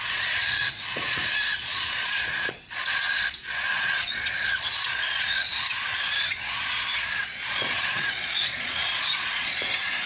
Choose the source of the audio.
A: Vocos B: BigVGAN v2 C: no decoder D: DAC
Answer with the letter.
A